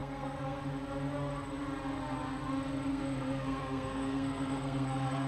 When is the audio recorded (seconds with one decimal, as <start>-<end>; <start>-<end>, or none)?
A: 0.6-2.9